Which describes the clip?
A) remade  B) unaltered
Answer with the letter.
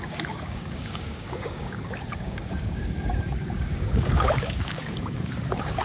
A